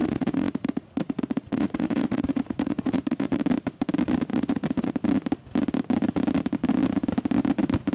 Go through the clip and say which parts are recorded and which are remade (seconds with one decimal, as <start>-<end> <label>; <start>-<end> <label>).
0.0-3.4 remade; 3.4-4.3 recorded; 4.3-4.9 remade; 4.9-7.9 recorded

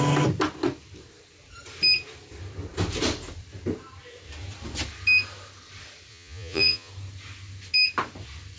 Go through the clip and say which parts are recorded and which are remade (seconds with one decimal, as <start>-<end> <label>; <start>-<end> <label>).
0.0-6.1 recorded; 6.1-6.9 remade; 6.9-8.6 recorded

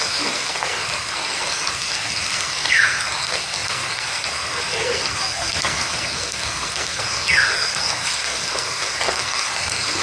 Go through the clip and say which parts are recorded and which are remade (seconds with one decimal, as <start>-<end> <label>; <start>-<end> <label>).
0.0-10.0 remade

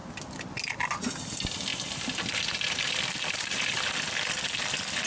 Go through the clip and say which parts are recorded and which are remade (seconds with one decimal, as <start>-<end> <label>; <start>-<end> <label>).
0.0-5.1 recorded